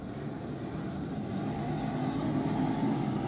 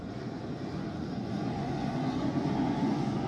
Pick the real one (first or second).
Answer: first